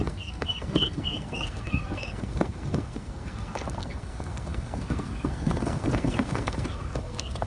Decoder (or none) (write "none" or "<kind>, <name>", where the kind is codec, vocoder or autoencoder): codec, SNAC